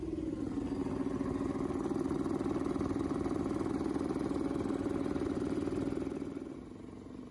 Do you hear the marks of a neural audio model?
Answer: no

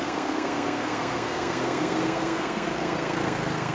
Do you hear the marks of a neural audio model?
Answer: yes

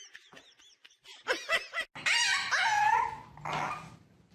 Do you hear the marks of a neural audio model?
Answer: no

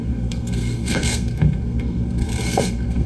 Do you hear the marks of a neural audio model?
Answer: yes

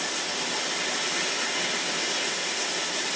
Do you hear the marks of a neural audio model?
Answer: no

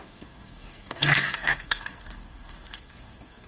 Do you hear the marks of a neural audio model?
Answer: yes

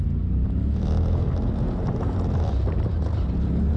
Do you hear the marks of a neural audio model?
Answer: no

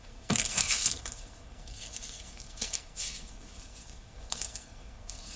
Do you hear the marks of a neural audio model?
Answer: yes